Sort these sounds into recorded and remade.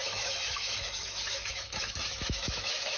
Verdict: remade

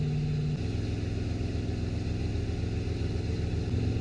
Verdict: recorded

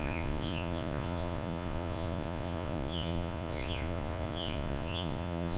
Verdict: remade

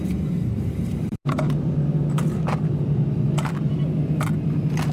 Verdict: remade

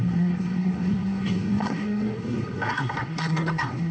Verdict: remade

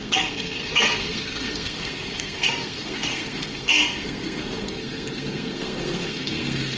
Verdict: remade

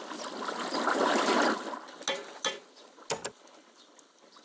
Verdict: recorded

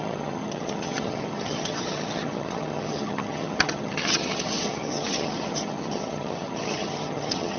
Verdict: remade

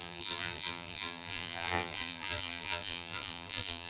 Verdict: remade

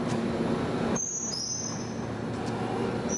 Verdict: recorded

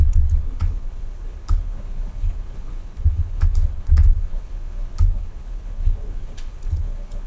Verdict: remade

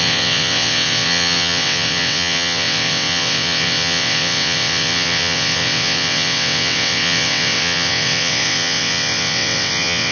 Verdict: remade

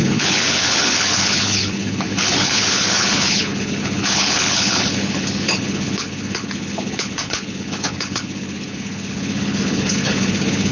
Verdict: remade